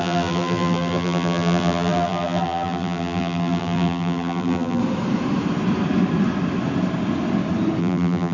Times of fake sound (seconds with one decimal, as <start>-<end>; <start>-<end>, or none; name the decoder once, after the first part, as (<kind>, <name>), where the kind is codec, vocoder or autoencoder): 0.0-4.8 (vocoder, BigVGAN v2); 7.8-8.3